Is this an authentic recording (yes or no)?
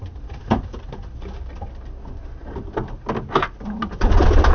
yes